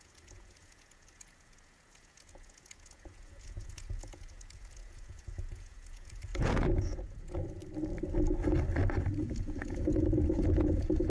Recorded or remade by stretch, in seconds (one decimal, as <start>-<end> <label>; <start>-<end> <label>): 0.0-7.6 remade; 7.6-9.2 recorded; 9.2-11.1 remade